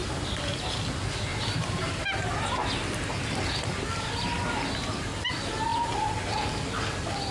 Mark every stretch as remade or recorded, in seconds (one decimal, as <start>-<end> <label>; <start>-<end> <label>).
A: 0.0-0.8 remade; 0.8-1.3 recorded; 1.3-2.0 remade; 2.0-5.7 recorded; 5.7-6.3 remade; 6.3-7.3 recorded